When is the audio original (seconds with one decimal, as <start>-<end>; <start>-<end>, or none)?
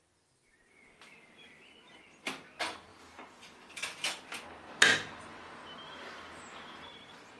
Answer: none